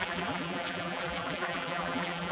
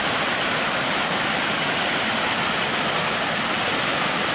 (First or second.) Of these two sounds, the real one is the second